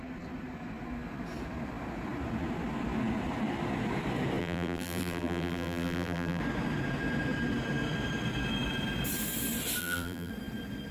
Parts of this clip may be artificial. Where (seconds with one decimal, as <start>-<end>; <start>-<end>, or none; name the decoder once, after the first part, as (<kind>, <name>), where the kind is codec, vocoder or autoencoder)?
4.4-6.4 (vocoder, BigVGAN v2); 9.8-10.3